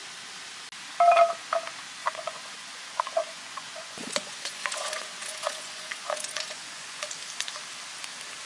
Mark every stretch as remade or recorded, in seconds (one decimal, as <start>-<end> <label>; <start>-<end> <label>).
0.0-2.0 recorded; 2.0-7.1 remade; 7.1-8.5 recorded